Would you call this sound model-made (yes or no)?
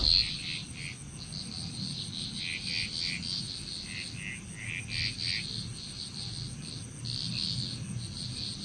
no